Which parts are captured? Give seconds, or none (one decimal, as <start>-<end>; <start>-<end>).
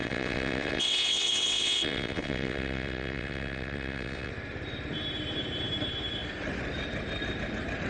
4.3-7.9